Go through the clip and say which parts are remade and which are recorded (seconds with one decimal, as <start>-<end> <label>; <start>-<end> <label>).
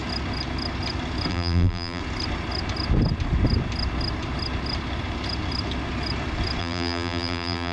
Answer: 0.0-1.3 recorded; 1.3-2.0 remade; 2.0-6.6 recorded; 6.6-7.7 remade